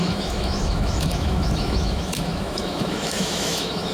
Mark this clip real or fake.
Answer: fake